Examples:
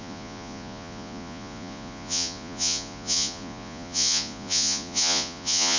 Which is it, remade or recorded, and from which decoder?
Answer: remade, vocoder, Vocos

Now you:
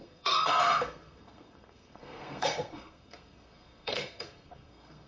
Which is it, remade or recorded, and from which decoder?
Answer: remade, codec, SNAC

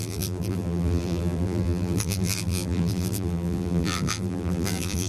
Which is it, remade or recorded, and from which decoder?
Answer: remade, vocoder, BigVGAN v2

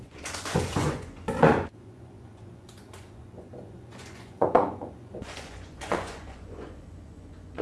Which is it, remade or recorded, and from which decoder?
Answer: remade, vocoder, Vocos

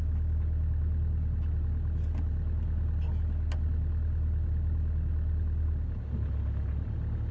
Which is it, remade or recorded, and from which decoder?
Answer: recorded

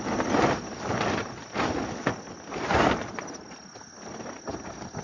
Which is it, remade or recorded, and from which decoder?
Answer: recorded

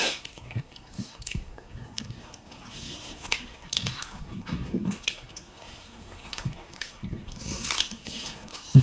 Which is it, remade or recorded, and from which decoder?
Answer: remade, codec, SNAC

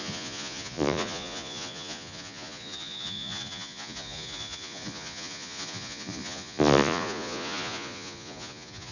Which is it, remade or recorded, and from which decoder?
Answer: remade, vocoder, Vocos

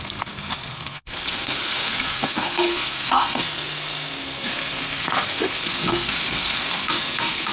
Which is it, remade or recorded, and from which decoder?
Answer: remade, codec, SNAC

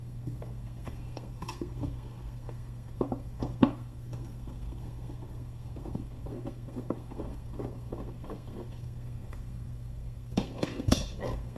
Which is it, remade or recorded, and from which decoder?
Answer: remade, codec, SNAC